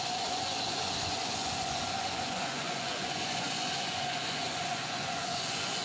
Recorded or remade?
remade